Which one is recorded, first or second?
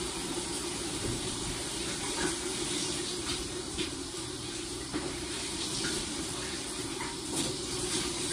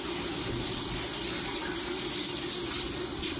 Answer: second